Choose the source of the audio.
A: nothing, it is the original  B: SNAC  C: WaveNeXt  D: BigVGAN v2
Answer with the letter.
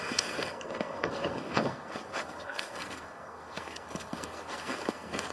B